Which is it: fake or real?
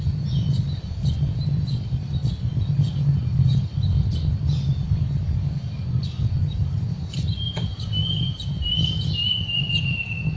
real